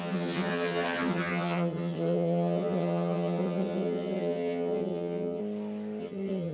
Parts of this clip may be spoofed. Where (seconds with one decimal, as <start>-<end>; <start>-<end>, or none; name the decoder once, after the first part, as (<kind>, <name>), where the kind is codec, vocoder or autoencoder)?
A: 0.0-5.4 (vocoder, HiFi-GAN); 6.0-6.5